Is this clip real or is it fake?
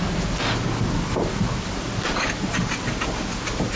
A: real